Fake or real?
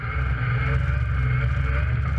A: real